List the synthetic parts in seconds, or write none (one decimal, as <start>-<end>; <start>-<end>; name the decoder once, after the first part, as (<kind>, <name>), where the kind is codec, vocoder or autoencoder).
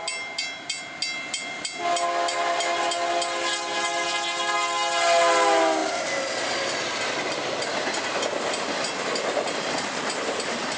none